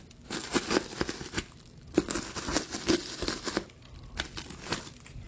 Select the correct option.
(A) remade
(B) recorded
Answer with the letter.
B